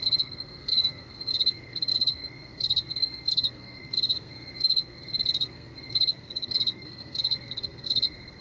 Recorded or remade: remade